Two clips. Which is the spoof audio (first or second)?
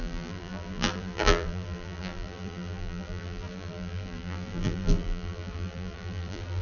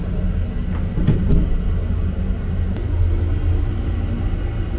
first